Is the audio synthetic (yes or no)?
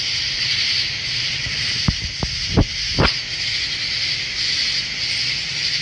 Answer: no